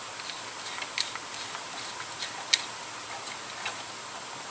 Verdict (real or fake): real